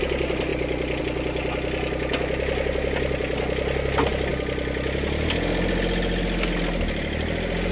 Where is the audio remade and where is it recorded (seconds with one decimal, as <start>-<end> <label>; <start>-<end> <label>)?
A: 0.0-7.7 recorded